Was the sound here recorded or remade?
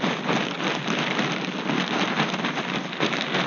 recorded